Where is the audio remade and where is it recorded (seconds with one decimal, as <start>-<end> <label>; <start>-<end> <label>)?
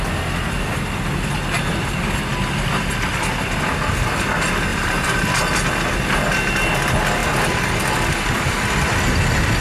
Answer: 0.0-4.7 recorded; 4.7-5.4 remade; 5.4-9.6 recorded